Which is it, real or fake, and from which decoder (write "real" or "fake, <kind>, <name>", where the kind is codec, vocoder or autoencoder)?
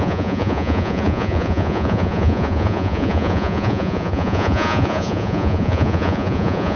fake, vocoder, Vocos